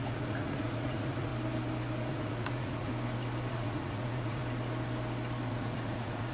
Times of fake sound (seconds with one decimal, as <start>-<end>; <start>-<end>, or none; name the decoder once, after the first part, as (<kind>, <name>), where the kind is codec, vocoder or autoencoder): 0.0-1.3 (vocoder, Vocos); 2.1-2.9; 3.5-4.4; 5.5-6.3